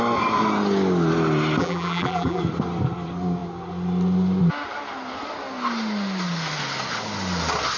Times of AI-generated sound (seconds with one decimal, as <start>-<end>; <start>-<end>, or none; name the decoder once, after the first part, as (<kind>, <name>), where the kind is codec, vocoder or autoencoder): 1.6-2.4 (vocoder, BigVGAN v2)